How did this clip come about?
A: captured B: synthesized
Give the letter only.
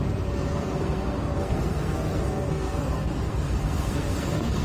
B